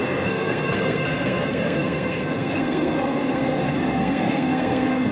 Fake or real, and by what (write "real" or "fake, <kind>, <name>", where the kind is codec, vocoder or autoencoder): fake, codec, SNAC